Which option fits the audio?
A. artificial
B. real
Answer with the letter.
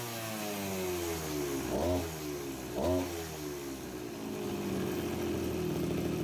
B